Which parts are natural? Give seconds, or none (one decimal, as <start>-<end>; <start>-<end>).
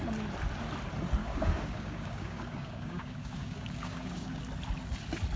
0.0-1.2; 4.4-5.4